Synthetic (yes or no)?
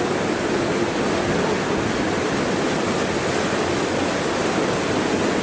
no